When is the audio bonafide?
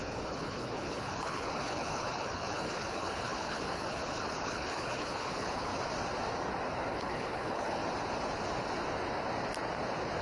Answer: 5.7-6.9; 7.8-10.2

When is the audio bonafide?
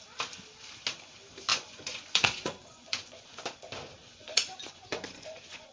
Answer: 0.0-1.5; 3.4-4.1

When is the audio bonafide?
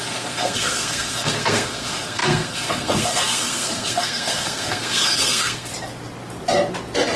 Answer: 5.7-7.2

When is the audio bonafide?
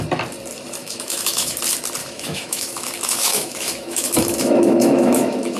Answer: 0.0-0.8; 1.6-2.0